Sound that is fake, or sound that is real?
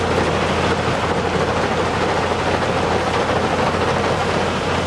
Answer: real